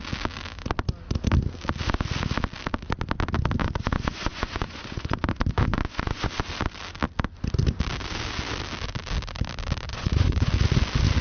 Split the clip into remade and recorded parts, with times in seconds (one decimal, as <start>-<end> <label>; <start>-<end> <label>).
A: 0.0-3.6 recorded; 3.6-6.3 remade; 6.3-9.9 recorded; 9.9-10.5 remade; 10.5-11.2 recorded